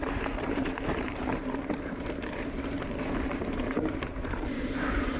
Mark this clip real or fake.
fake